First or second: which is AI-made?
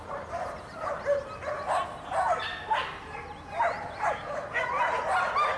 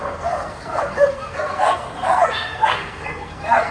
second